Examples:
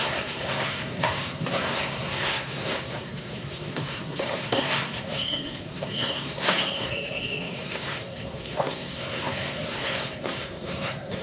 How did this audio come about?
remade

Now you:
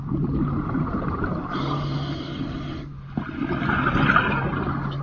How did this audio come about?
recorded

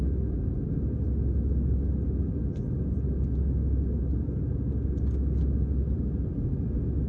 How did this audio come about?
recorded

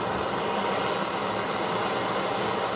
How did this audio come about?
recorded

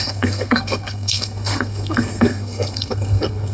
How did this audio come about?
remade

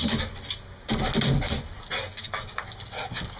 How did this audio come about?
recorded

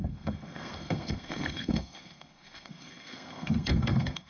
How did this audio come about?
remade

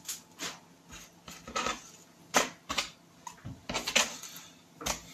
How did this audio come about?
recorded